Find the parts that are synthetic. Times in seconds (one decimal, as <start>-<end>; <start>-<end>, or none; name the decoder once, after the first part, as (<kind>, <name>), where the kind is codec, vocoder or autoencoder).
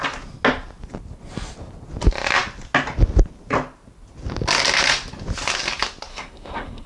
6.1-6.9 (codec, SNAC)